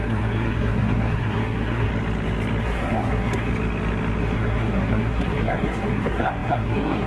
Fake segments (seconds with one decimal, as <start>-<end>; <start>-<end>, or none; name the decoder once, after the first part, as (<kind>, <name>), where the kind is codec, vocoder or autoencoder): 0.0-1.9 (codec, SNAC); 2.6-3.5; 4.2-7.1